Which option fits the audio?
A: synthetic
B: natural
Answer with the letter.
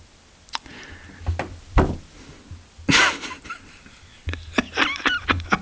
B